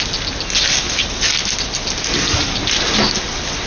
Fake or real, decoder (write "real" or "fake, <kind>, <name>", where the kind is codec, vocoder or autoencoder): real